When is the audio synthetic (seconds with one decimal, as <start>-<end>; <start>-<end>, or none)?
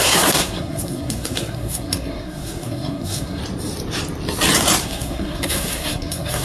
0.0-3.4; 4.8-6.4